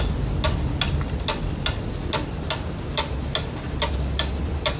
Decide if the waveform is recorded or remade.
recorded